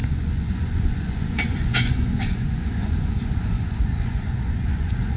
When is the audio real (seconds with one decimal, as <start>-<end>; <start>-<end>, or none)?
none